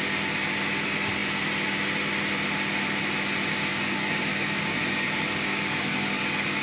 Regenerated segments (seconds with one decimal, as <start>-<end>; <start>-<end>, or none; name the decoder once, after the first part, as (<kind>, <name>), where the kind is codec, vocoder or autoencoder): 3.7-6.6 (codec, DAC)